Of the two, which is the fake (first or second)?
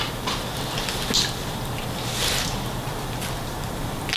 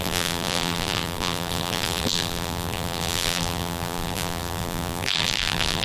second